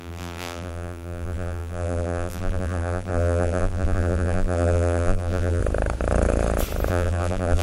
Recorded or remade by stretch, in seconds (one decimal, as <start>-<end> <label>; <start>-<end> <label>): 0.0-5.6 remade; 5.6-6.9 recorded; 6.9-7.6 remade